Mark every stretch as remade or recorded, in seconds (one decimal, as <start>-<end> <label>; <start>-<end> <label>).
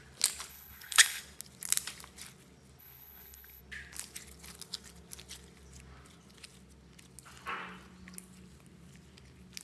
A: 0.0-0.5 recorded; 0.5-1.2 remade; 1.2-2.8 recorded; 2.8-3.6 remade; 3.6-9.6 recorded